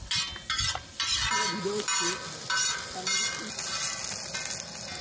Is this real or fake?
real